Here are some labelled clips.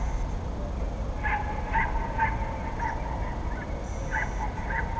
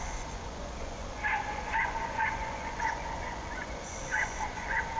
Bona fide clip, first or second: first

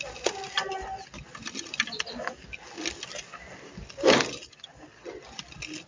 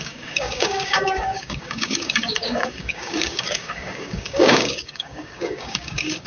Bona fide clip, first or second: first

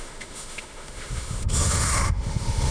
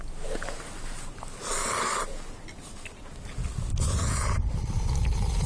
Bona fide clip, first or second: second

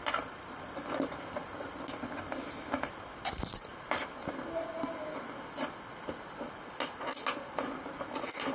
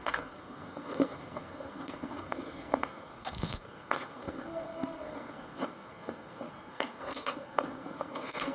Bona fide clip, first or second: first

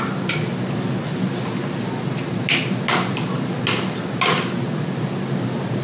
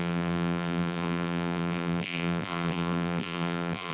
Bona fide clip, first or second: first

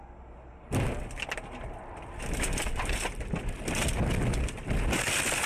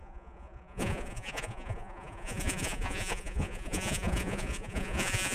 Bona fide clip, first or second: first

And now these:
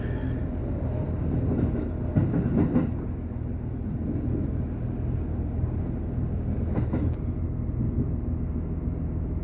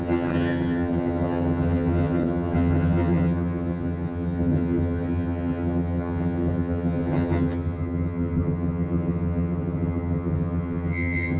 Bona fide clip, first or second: first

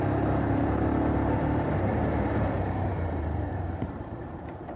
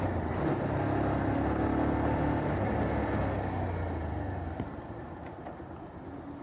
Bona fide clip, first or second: second